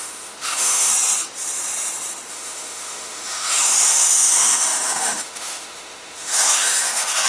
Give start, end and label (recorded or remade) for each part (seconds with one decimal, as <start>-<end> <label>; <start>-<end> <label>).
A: 0.0-0.9 remade; 0.9-2.3 recorded; 2.3-7.3 remade